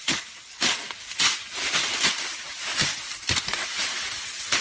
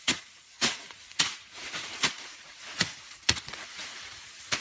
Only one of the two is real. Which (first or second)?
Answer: first